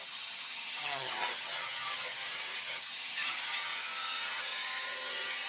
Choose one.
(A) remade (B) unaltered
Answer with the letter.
A